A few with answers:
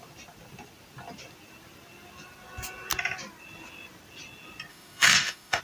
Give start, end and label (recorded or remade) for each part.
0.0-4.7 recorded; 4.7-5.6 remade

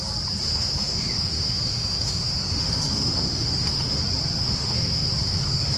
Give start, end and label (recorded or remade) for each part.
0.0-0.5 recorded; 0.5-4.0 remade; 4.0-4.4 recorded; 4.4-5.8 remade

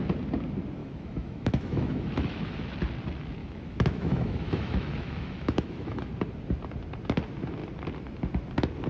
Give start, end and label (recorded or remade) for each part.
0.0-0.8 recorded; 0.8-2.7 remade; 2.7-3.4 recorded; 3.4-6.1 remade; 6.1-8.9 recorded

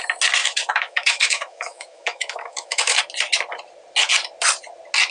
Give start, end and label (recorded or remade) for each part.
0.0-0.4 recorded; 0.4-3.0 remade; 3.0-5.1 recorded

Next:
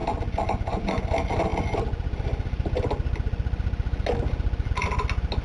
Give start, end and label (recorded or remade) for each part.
0.0-5.4 recorded

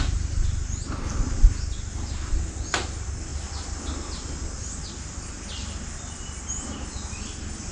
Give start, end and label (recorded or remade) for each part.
0.0-7.7 recorded